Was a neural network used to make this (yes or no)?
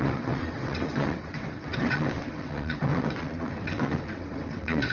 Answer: yes